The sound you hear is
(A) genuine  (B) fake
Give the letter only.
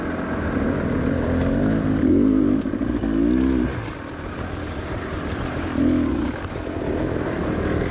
A